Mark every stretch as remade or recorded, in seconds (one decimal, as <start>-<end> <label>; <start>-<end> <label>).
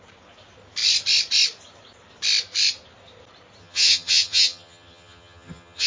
0.0-3.6 recorded; 3.6-5.9 remade